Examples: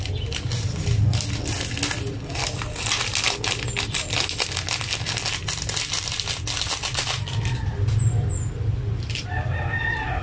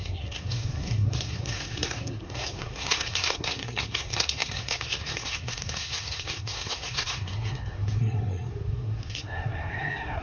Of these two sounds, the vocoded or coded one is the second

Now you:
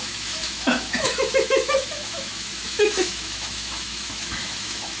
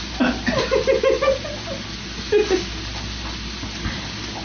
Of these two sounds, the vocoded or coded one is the first